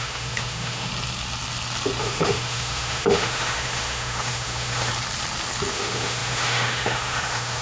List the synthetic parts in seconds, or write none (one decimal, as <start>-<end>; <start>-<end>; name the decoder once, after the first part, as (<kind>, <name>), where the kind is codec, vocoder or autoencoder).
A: 0.0-0.9 (autoencoder, DAC-VAE); 2.0-4.9; 5.7-7.6